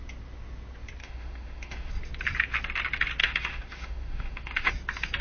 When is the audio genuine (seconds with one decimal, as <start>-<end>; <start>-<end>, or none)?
0.0-1.0; 1.9-3.2; 4.7-5.2